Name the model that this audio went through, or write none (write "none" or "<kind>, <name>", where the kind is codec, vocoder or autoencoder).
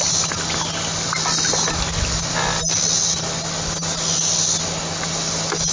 none